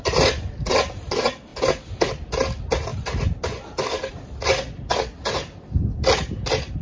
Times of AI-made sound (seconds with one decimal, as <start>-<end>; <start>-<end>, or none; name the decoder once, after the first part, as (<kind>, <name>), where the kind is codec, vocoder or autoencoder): none